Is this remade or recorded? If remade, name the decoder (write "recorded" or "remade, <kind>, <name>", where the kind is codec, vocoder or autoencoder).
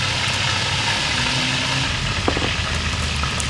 recorded